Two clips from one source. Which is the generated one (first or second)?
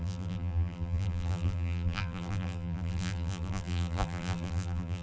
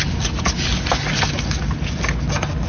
first